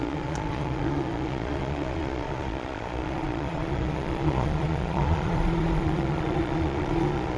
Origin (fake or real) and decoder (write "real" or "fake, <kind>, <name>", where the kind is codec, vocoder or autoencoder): fake, vocoder, Vocos